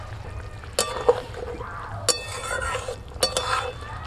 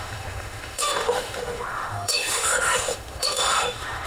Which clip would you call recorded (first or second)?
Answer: first